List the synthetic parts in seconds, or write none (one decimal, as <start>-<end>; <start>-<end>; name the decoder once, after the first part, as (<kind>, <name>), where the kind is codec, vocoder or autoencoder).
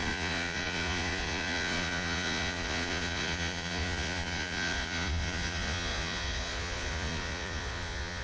0.0-8.2 (vocoder, Vocos)